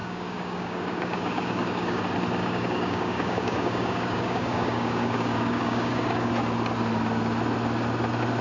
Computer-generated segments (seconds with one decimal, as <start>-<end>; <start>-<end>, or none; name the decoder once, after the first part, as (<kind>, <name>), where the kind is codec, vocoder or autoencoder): 0.0-2.0 (codec, DAC); 2.4-6.3